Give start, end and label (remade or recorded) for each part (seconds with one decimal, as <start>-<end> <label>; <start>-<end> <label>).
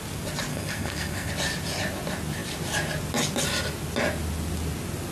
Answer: 0.0-0.5 recorded; 0.5-1.3 remade; 1.3-5.1 recorded